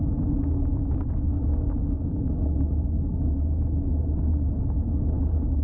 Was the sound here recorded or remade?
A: remade